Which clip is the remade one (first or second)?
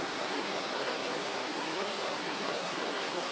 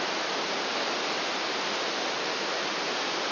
first